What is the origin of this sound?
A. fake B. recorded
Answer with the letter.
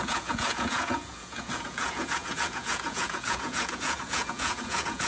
A